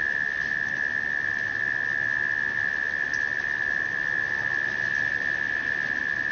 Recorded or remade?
recorded